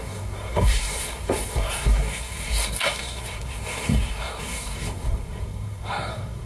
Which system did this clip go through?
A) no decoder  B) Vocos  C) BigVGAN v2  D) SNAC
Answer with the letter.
D